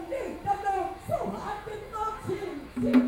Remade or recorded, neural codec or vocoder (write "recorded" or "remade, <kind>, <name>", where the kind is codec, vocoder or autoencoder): remade, autoencoder, DAC-VAE